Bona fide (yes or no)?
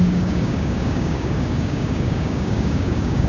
no